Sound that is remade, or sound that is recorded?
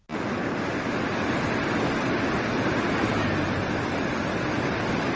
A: recorded